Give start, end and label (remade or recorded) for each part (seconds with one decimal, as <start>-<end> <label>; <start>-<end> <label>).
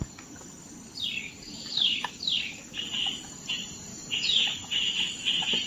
0.0-3.9 recorded; 3.9-5.3 remade; 5.3-5.7 recorded